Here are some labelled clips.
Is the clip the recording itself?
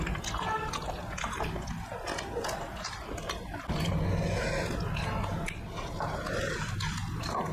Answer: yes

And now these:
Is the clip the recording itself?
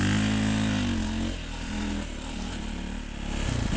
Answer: yes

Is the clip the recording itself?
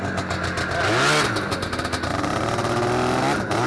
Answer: yes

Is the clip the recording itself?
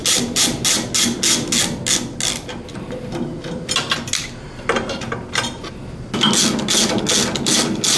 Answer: yes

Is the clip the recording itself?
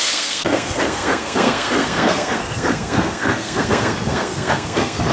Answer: no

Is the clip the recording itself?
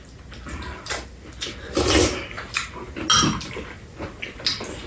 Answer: yes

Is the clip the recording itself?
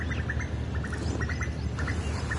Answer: yes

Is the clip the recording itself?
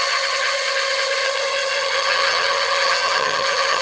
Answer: no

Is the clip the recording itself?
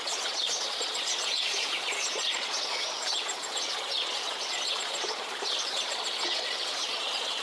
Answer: no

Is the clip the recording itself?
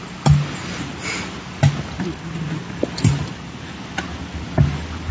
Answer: yes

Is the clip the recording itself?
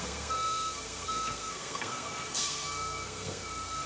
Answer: no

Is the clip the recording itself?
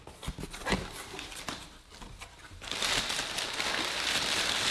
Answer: yes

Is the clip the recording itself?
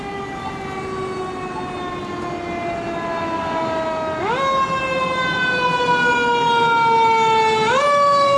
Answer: yes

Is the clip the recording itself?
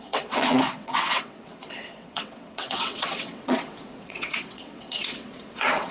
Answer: no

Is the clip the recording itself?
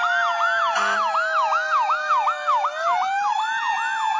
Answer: yes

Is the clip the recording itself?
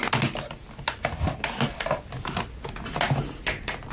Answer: yes